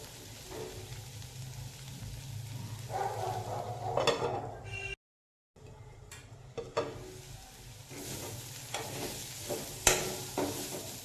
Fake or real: real